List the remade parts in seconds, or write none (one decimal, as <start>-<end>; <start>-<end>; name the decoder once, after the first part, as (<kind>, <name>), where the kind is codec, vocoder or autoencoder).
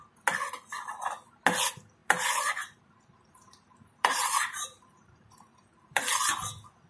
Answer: 2.0-6.0 (vocoder, BigVGAN v2)